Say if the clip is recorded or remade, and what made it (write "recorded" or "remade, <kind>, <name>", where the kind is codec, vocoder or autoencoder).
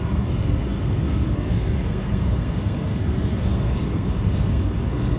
remade, codec, SNAC